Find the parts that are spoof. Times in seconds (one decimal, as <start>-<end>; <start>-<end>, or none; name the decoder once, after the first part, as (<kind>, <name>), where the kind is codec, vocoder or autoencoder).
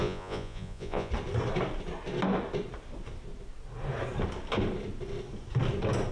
0.0-1.1 (vocoder, Vocos)